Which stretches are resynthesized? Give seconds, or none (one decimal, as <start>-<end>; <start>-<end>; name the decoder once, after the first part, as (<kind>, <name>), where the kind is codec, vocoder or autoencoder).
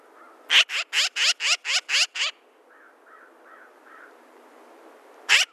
3.7-5.5 (vocoder, BigVGAN v2)